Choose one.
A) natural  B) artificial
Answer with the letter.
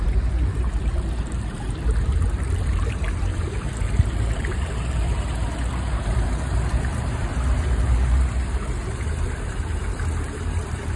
B